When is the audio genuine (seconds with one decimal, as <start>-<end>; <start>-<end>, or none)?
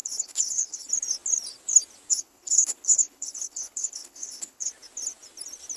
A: 0.9-2.1; 4.7-5.8